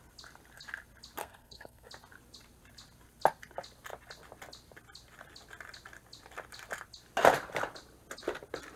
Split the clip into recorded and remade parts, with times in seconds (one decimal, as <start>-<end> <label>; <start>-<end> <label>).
0.0-1.2 recorded; 1.2-1.9 remade; 1.9-8.8 recorded